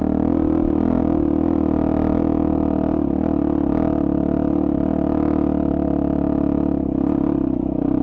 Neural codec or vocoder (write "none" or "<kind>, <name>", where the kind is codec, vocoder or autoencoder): none